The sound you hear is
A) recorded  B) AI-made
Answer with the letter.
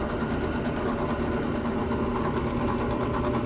A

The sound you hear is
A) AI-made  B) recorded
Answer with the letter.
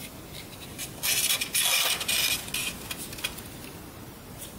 B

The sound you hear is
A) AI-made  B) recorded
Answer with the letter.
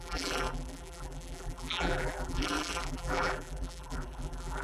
A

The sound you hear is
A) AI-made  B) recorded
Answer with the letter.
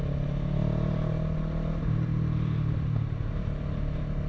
B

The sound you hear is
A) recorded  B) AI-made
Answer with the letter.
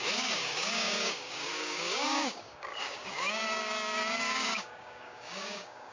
B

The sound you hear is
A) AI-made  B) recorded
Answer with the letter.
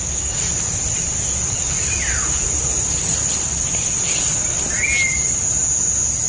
B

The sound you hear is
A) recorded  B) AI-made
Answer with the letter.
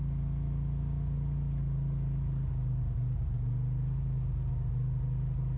A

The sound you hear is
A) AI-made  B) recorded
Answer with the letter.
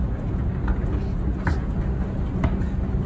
B